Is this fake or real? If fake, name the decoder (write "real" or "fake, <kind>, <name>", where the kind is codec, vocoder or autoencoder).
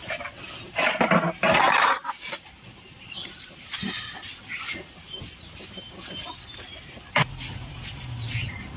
real